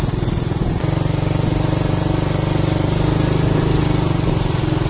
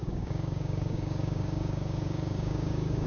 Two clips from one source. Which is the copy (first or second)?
second